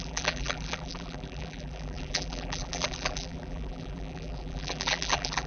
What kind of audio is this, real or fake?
fake